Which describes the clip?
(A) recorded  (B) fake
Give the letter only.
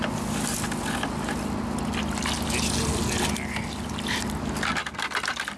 A